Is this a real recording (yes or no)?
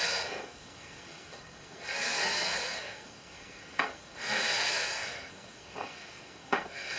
no